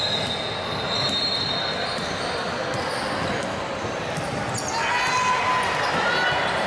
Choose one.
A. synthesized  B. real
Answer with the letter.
B